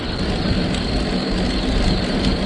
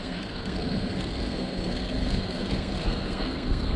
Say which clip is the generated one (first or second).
second